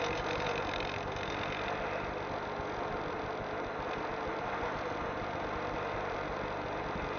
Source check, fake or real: real